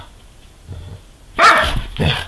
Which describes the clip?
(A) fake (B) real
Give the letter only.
B